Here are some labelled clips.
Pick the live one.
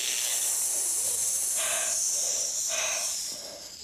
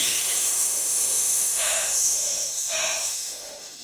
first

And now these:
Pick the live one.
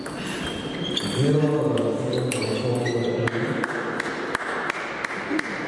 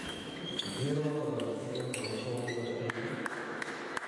first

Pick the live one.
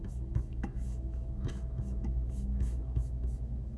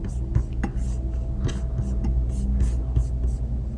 second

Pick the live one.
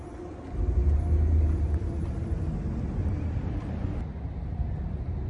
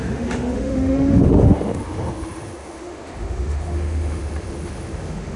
first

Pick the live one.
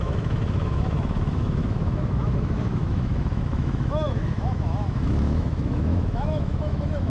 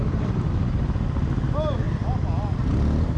second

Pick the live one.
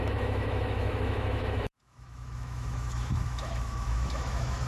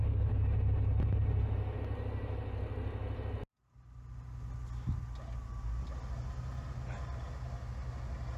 second